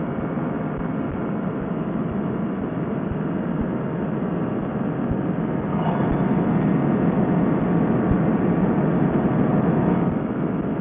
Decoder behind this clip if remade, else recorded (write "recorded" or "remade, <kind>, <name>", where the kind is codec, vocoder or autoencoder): recorded